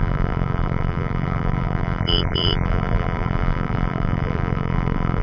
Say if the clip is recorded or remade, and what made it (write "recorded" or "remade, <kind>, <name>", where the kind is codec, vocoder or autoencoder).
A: remade, vocoder, BigVGAN v2